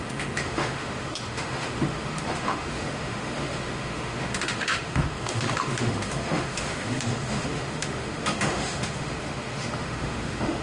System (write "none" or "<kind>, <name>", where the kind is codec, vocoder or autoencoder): autoencoder, DAC-VAE